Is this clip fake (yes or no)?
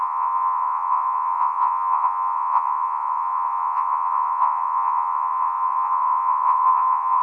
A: yes